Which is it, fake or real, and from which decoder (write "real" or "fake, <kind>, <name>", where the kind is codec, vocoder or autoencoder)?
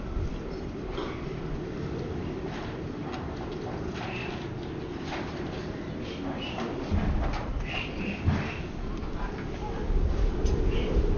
real